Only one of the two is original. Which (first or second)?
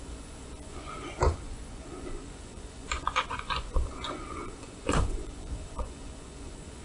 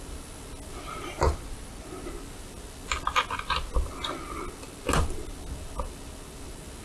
second